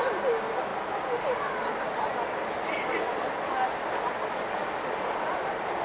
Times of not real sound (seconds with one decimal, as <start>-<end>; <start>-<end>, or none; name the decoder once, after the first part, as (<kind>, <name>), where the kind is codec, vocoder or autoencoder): none